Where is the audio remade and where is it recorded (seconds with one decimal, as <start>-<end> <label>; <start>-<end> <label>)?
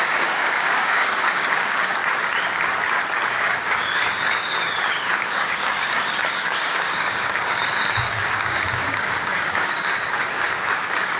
0.0-2.0 remade; 2.0-3.3 recorded; 3.3-11.2 remade